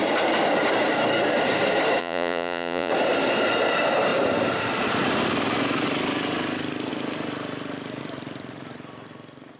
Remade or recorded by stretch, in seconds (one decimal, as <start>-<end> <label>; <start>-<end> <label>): 0.0-2.0 recorded; 2.0-2.9 remade; 2.9-9.6 recorded